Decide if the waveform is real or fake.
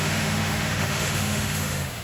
fake